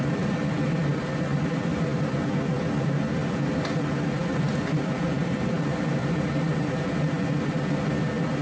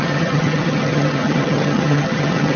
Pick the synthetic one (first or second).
second